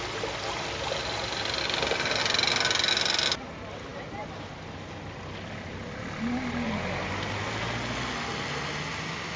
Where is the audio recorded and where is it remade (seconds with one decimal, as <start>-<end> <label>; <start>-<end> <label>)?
0.0-9.4 recorded